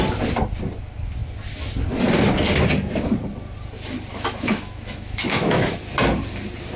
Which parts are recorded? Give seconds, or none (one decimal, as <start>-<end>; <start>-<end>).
0.0-4.1; 5.8-6.8